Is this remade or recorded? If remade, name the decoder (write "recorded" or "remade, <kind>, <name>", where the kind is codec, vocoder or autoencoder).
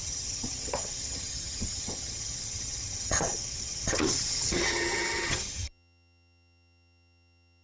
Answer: remade, vocoder, HiFi-GAN